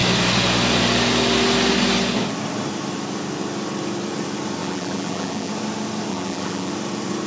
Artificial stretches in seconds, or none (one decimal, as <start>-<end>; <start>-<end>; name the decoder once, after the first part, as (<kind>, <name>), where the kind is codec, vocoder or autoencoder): 4.6-5.5 (vocoder, BigVGAN v2); 6.1-6.7

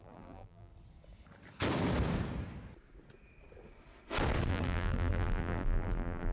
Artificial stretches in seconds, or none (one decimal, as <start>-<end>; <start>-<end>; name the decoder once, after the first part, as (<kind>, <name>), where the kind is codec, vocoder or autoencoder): 0.0-0.7 (vocoder, BigVGAN v2); 4.5-6.3

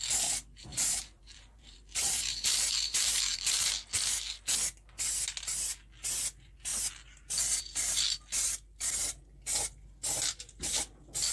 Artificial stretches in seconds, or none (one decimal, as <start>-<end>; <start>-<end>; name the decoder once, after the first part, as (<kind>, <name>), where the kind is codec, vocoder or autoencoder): 0.7-3.7 (vocoder, BigVGAN v2)

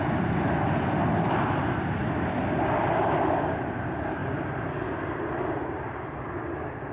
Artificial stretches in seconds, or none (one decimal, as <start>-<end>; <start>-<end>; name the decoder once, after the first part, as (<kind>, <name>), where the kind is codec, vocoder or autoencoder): none

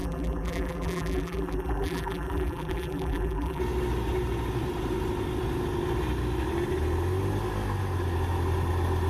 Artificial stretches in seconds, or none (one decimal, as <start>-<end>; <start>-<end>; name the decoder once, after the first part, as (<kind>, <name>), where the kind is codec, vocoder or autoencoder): 0.0-3.6 (vocoder, BigVGAN v2)

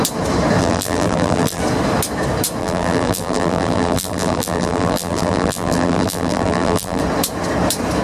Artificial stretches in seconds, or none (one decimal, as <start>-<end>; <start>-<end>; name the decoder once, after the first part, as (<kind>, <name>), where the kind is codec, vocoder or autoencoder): 0.6-1.6 (vocoder, BigVGAN v2); 2.6-7.0